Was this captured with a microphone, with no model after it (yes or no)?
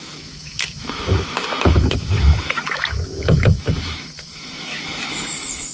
no